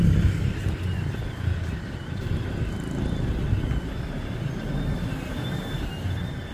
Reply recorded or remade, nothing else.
recorded